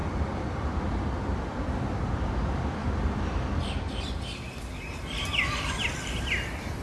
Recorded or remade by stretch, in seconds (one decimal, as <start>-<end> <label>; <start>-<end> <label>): 0.0-2.8 remade; 2.8-5.2 recorded; 5.2-6.8 remade